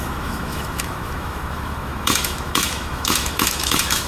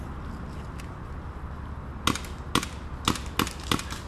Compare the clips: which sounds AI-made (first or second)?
first